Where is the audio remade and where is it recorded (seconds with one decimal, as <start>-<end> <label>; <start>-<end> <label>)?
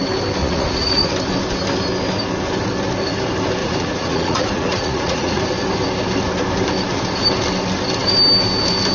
0.0-0.4 recorded; 0.4-1.1 remade; 1.1-3.6 recorded; 3.6-5.4 remade; 5.4-8.9 recorded